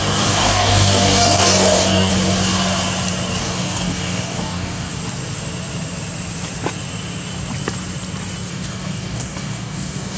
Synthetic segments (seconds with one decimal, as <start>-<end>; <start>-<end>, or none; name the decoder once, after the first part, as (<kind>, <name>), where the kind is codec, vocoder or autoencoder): 0.0-2.1 (codec, DAC); 3.4-4.9; 8.5-10.2